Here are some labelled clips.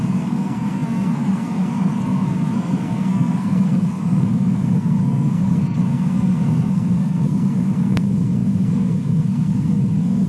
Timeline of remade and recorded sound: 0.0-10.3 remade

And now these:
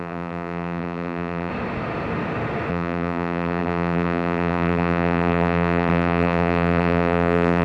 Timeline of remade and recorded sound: 0.0-1.5 remade; 1.5-2.7 recorded; 2.7-7.6 remade

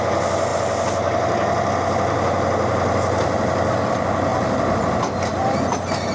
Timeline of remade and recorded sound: 0.0-6.1 recorded

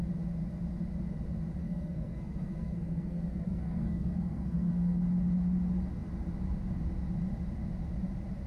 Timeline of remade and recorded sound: 0.0-1.6 recorded; 1.6-5.0 remade; 5.0-8.5 recorded

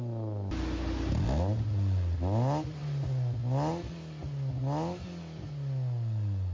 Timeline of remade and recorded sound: 0.0-6.5 recorded

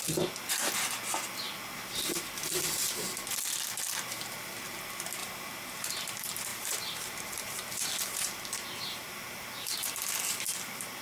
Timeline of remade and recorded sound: 0.0-5.2 recorded; 5.2-5.9 remade; 5.9-6.5 recorded; 6.5-9.9 remade; 9.9-11.0 recorded